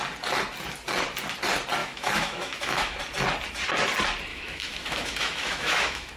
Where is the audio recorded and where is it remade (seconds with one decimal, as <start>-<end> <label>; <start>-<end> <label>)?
0.0-1.8 recorded; 1.8-3.0 remade; 3.0-4.3 recorded; 4.3-6.2 remade